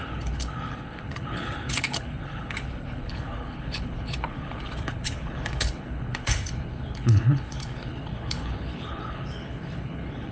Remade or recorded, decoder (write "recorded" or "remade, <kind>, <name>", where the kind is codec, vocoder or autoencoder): remade, codec, HILCodec